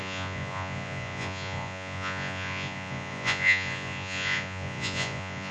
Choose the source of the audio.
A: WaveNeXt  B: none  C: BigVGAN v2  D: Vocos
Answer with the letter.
D